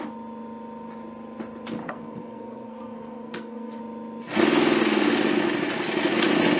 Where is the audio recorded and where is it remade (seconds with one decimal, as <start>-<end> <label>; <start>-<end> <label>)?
0.0-1.8 recorded; 1.8-3.8 remade; 3.8-6.6 recorded